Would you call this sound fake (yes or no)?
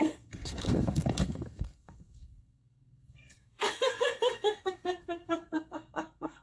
yes